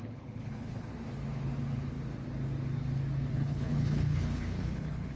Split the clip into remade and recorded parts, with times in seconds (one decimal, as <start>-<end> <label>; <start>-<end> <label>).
0.0-0.9 remade; 0.9-3.3 recorded; 3.3-5.2 remade